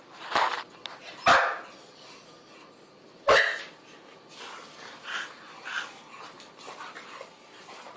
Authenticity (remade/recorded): recorded